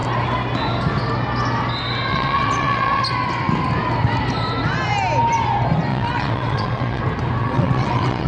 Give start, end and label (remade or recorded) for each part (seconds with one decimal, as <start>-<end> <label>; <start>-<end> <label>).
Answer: 0.0-2.1 recorded; 2.1-3.0 remade; 3.0-5.9 recorded; 5.9-7.0 remade; 7.0-7.4 recorded; 7.4-8.3 remade